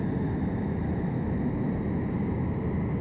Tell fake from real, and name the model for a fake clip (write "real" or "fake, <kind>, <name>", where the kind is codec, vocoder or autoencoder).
real